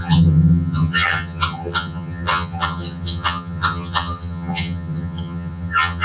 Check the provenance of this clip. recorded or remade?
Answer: remade